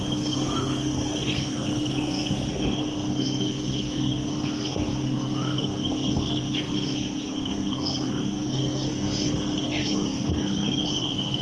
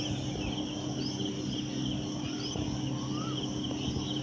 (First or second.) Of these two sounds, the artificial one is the first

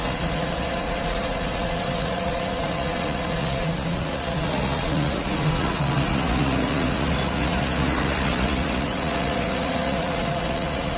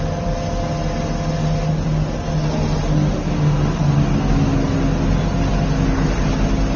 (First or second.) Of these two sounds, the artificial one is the first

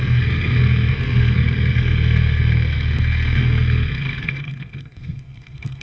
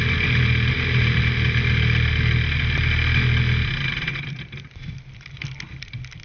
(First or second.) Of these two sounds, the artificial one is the first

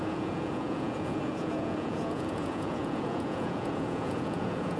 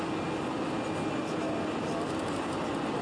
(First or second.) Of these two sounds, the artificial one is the first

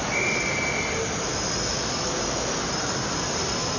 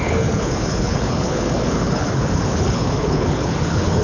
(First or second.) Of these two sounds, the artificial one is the second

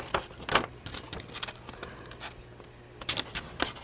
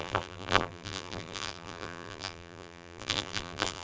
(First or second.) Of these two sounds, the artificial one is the second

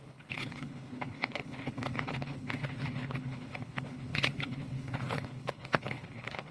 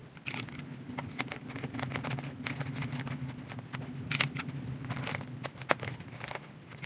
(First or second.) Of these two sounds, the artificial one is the first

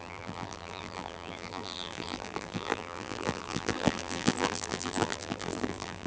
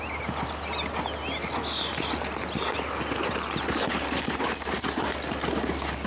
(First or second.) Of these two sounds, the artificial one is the first